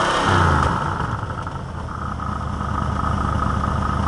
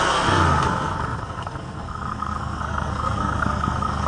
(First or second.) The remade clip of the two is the second